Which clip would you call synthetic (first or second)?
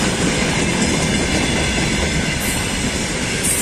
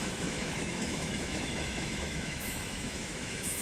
second